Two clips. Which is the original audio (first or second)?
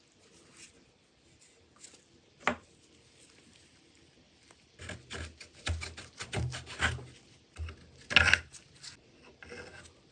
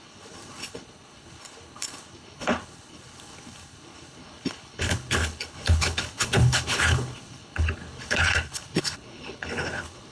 first